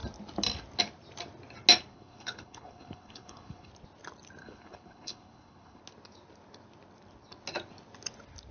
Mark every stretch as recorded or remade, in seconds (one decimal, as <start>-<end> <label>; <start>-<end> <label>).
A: 0.0-1.9 recorded; 1.9-3.7 remade; 3.7-4.4 recorded; 4.4-5.8 remade; 5.8-8.5 recorded